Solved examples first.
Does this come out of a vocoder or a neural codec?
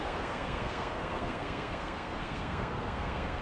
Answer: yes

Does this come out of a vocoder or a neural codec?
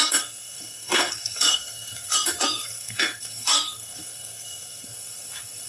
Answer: yes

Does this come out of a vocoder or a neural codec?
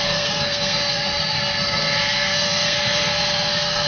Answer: yes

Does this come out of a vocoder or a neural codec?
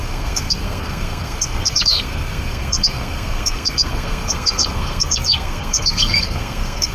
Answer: yes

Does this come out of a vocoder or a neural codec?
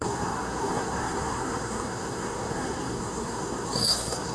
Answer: yes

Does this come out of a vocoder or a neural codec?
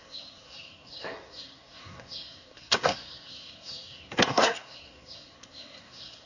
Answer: yes